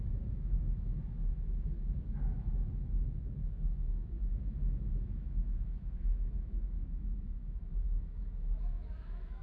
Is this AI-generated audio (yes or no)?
yes